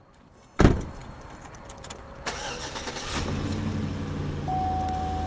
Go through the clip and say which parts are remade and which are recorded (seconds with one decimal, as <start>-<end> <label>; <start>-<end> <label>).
0.0-5.3 recorded